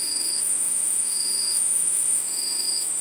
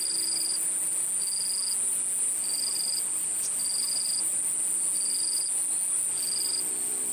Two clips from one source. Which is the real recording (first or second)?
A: second